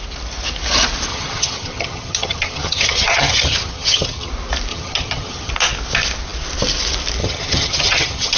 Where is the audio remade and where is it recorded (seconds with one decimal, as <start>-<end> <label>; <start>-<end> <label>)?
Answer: 0.0-1.1 recorded; 1.1-4.3 remade; 4.3-4.7 recorded; 4.7-5.5 remade; 5.5-7.2 recorded; 7.2-8.4 remade